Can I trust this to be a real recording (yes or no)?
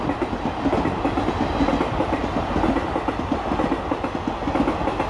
yes